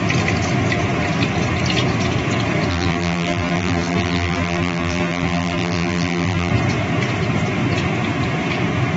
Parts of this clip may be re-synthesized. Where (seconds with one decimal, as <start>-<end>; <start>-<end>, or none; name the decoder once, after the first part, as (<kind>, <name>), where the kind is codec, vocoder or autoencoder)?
2.7-6.5 (vocoder, BigVGAN v2)